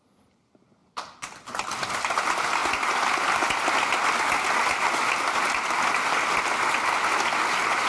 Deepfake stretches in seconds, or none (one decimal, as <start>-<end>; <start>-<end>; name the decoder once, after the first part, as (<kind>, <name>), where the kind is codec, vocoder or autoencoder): none